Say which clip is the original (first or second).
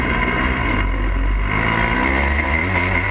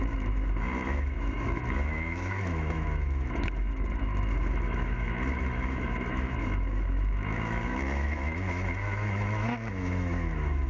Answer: first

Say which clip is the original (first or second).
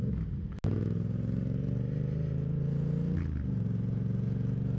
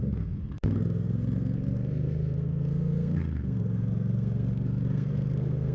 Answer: first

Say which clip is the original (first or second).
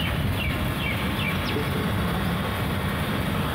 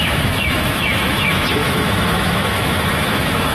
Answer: first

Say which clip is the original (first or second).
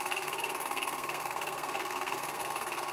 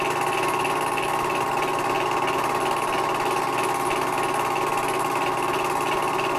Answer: second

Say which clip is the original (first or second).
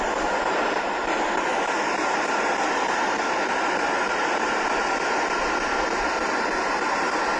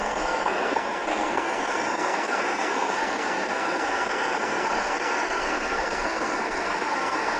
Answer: first